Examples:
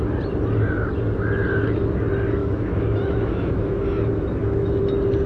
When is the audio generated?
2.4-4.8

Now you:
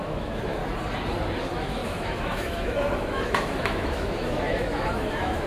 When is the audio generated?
0.0-0.6; 1.4-5.5

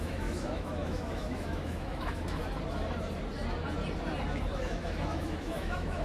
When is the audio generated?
0.0-2.4; 4.5-6.0

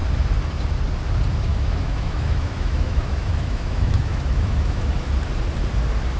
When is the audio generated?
1.5-5.1

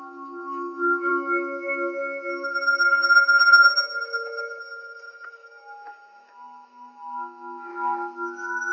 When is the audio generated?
0.0-1.1; 4.6-7.7

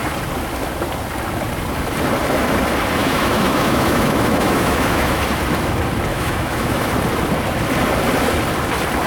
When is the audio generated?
3.0-5.2; 6.1-6.9

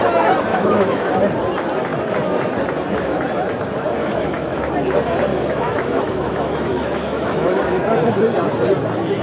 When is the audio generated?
0.5-1.1; 4.0-4.7; 5.3-7.6

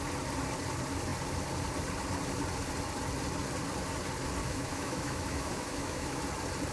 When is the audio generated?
4.4-6.2